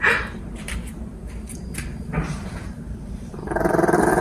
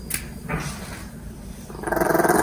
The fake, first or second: first